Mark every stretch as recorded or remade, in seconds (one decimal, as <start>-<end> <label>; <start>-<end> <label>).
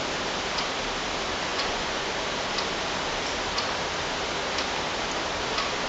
0.0-1.5 recorded; 1.5-2.1 remade; 2.1-5.9 recorded